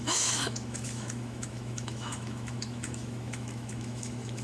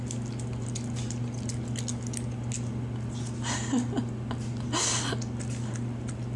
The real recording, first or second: second